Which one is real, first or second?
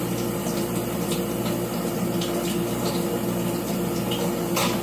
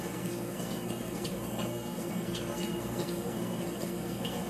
first